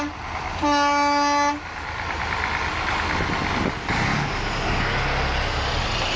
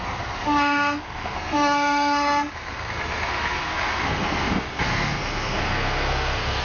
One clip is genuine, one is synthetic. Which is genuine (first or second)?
first